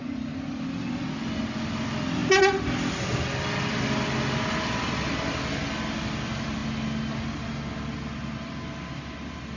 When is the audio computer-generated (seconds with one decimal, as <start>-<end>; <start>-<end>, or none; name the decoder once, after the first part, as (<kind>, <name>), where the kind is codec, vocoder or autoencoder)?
none